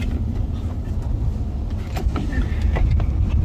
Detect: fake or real real